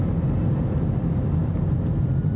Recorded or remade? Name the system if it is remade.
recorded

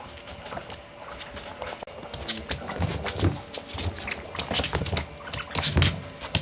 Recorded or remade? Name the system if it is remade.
recorded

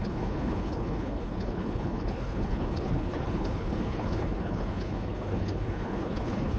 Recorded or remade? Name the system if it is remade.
remade, codec, HILCodec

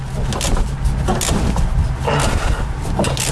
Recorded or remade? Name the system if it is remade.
recorded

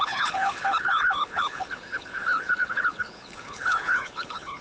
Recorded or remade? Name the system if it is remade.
remade, codec, HILCodec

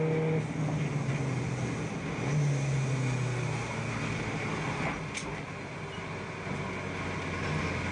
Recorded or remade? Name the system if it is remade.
recorded